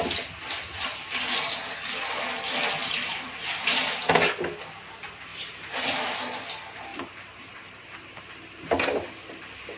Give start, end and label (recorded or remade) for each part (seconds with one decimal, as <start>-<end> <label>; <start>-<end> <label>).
0.0-2.8 recorded; 2.8-4.1 remade; 4.1-5.3 recorded; 5.3-6.2 remade; 6.2-6.9 recorded; 6.9-8.3 remade; 8.3-9.8 recorded